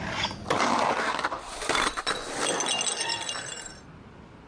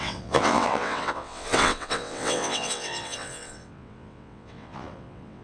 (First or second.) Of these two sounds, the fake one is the second